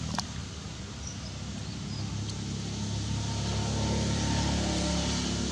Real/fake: real